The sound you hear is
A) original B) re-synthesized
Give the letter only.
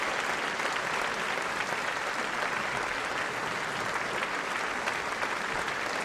A